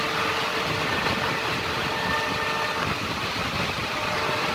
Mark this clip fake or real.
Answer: real